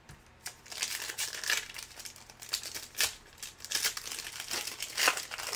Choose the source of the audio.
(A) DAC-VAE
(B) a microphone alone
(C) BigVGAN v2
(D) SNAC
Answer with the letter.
B